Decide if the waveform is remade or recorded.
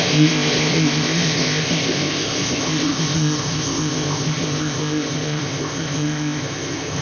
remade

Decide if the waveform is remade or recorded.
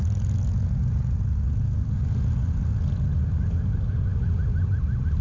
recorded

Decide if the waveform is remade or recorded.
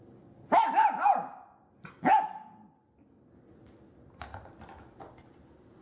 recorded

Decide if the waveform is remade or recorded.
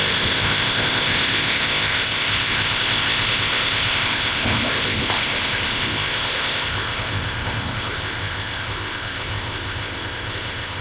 remade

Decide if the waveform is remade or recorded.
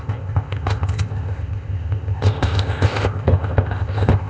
remade